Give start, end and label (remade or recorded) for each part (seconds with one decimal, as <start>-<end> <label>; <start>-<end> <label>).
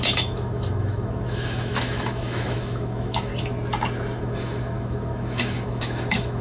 0.0-3.3 remade; 3.3-4.2 recorded; 4.2-6.4 remade